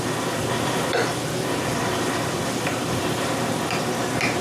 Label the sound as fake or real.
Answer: fake